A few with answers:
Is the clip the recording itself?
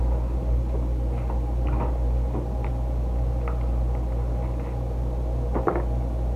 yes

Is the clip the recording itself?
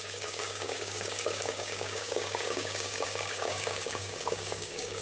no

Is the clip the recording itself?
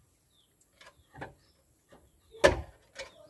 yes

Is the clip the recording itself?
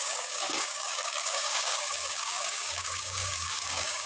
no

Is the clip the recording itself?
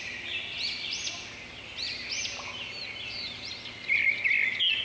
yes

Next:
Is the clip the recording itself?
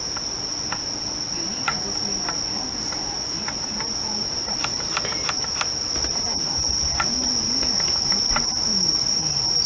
yes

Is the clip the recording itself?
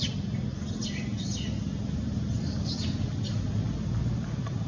yes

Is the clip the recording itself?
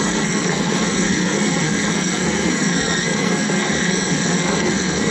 no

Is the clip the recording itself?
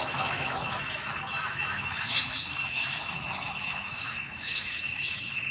no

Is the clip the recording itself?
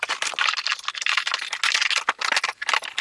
yes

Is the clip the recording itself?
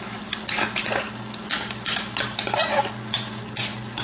yes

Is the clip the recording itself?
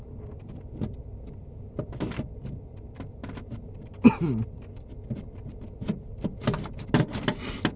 yes